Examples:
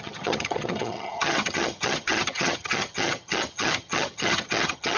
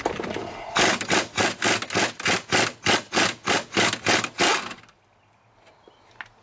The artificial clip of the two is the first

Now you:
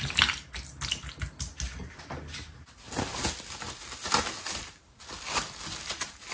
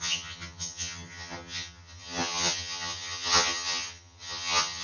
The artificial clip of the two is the second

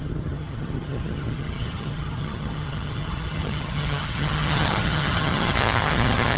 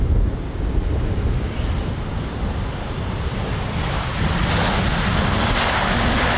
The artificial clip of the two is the first